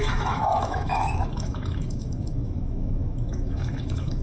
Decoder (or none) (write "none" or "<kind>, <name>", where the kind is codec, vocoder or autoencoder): autoencoder, DAC-VAE